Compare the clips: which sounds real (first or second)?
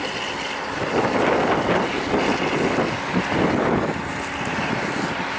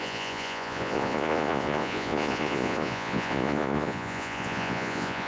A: first